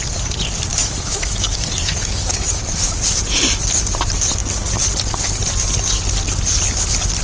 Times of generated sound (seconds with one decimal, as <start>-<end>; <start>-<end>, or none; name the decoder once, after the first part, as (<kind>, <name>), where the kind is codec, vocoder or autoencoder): 0.7-2.6 (autoencoder, DAC-VAE)

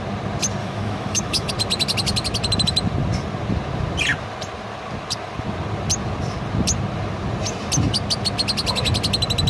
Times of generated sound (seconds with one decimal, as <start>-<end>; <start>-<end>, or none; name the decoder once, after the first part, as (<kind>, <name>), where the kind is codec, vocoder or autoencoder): 0.6-1.5 (autoencoder, DAC-VAE)

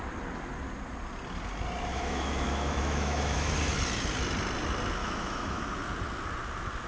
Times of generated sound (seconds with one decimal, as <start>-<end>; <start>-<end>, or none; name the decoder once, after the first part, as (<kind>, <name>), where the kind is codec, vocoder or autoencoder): 1.9-3.6 (autoencoder, DAC-VAE); 5.0-5.6

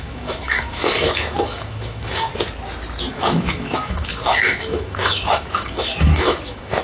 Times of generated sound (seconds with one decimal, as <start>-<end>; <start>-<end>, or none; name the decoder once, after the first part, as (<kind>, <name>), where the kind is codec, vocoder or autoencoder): 0.0-2.3 (autoencoder, DAC-VAE); 3.1-6.8

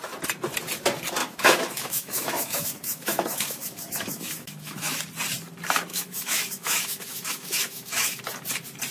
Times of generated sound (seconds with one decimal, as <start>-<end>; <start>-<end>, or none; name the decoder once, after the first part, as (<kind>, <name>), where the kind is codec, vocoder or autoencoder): 1.2-5.0 (autoencoder, DAC-VAE); 5.9-8.2

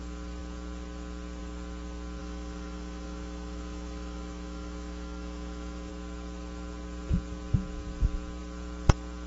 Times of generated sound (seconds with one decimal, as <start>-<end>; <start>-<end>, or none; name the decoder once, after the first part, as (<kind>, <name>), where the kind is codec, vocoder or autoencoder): 2.2-5.9 (autoencoder, DAC-VAE)

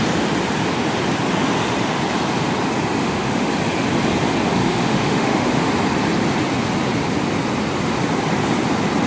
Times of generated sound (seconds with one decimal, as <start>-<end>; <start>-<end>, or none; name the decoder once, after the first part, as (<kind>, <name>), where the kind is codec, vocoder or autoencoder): 3.0-3.5 (autoencoder, DAC-VAE); 4.6-5.7